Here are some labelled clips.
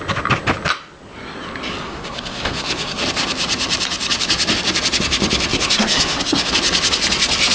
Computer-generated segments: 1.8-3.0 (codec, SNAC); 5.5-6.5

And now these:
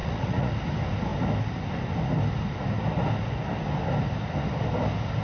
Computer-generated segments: 0.0-0.5 (vocoder, Vocos)